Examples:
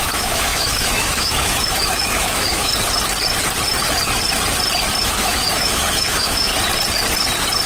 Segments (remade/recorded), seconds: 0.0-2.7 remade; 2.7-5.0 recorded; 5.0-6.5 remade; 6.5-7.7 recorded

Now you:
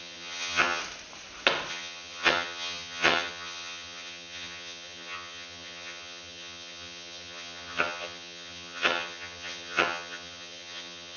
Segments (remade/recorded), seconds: 0.0-0.8 remade; 0.8-1.7 recorded; 1.7-11.2 remade

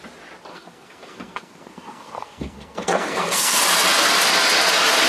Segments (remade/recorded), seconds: 0.0-0.5 recorded; 0.5-3.6 remade; 3.6-5.1 recorded

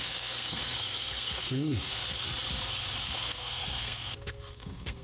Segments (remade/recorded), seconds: 0.0-2.1 remade; 2.1-3.0 recorded; 3.0-5.0 remade

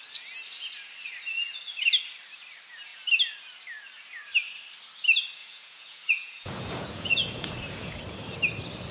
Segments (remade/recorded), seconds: 0.0-5.4 recorded; 5.4-8.0 remade; 8.0-8.9 recorded